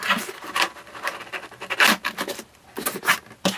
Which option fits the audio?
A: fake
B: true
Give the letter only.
B